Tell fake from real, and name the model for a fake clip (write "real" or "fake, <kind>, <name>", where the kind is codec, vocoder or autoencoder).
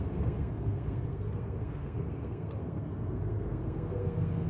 fake, codec, SNAC